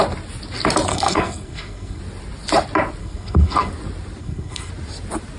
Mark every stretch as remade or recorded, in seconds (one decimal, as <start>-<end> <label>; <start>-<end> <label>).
0.0-0.9 recorded; 0.9-2.0 remade; 2.0-3.0 recorded; 3.0-3.7 remade; 3.7-4.2 recorded; 4.2-4.7 remade; 4.7-5.4 recorded

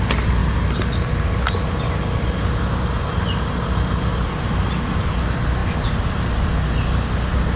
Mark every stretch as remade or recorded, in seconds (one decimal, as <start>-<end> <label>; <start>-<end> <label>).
0.0-7.6 recorded

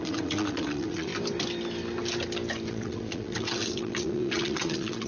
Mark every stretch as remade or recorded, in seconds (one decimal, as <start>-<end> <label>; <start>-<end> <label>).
0.0-1.1 remade; 1.1-2.7 recorded; 2.7-5.1 remade

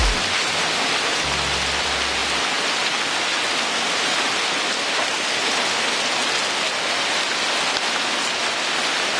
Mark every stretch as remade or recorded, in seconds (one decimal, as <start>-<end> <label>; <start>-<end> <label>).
0.0-9.2 recorded